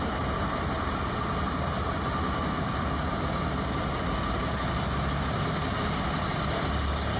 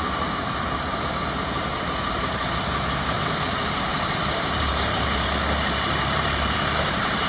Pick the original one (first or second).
first